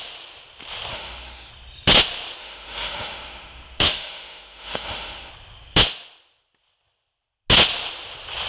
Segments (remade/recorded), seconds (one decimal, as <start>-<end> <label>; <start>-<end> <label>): 0.0-0.9 recorded; 0.9-1.5 remade; 1.5-2.4 recorded; 2.4-5.3 remade; 5.3-8.5 recorded